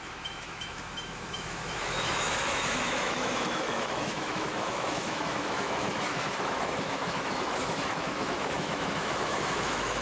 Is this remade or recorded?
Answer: remade